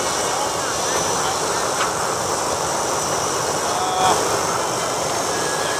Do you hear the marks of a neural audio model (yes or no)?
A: no